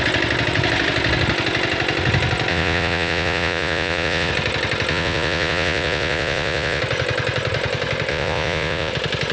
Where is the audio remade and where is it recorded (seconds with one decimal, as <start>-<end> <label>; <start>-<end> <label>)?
0.0-2.5 recorded; 2.5-4.3 remade; 4.3-4.9 recorded; 4.9-6.8 remade; 6.8-8.1 recorded; 8.1-8.9 remade; 8.9-9.3 recorded